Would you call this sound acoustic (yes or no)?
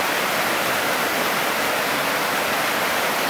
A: no